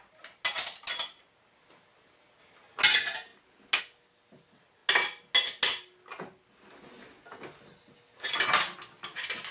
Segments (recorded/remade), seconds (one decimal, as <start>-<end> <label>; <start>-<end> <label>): 0.0-9.5 recorded